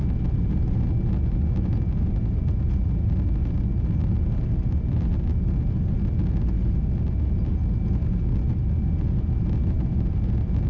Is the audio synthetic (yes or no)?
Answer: no